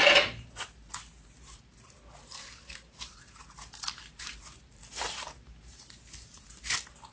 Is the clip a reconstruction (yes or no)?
yes